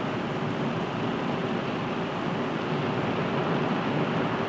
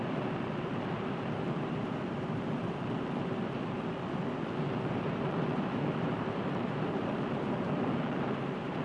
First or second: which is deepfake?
second